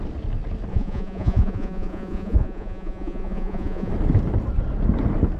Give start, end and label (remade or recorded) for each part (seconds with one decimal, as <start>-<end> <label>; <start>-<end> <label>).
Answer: 0.0-0.7 recorded; 0.7-3.9 remade; 3.9-5.4 recorded